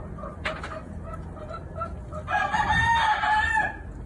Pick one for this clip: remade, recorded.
recorded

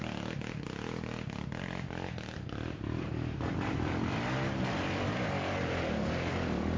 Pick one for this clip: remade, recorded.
recorded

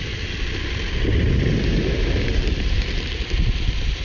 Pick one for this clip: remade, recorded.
recorded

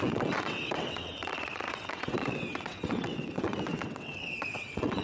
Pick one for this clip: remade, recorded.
remade